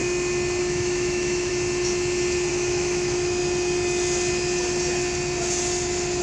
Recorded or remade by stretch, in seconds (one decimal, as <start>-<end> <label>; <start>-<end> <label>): 0.0-0.6 recorded; 0.6-1.5 remade; 1.5-2.5 recorded; 2.5-3.4 remade; 3.4-6.2 recorded

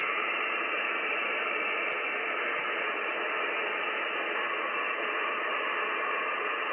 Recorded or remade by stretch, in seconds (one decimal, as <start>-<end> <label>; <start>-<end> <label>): 0.0-1.1 remade; 1.1-6.7 recorded